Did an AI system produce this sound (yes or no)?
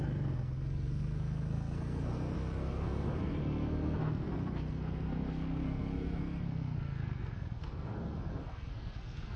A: yes